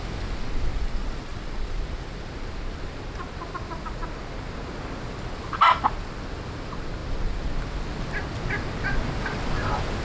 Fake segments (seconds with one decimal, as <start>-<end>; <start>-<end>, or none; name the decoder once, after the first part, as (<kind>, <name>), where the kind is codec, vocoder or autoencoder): 0.7-1.7 (vocoder, Vocos)